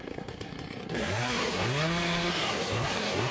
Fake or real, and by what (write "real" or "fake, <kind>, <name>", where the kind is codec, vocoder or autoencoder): fake, codec, SNAC